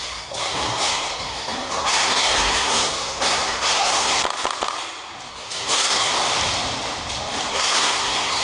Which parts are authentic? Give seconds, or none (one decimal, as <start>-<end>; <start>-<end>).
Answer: 4.2-5.3; 6.1-7.5